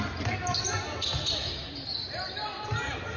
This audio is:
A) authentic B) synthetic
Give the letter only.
A